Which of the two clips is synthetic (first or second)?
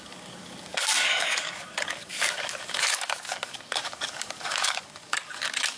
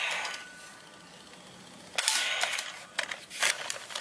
first